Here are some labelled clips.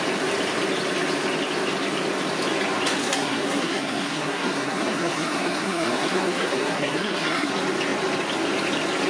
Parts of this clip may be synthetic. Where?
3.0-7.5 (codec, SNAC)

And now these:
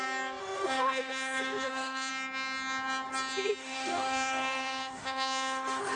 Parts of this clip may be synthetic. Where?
0.4-2.1 (autoencoder, DAC-VAE); 3.6-6.0

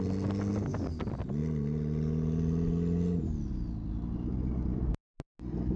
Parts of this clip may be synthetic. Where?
none

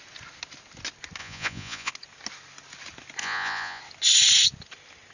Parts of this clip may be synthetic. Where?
1.2-1.9 (vocoder, Vocos); 3.2-3.8

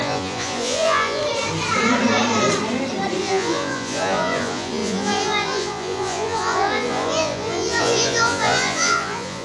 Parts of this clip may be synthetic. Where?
0.0-1.2 (vocoder, Vocos); 3.2-9.4

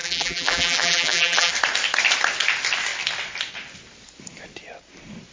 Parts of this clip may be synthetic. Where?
0.0-1.5 (vocoder, BigVGAN v2)

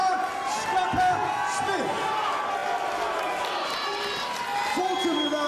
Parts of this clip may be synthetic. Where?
none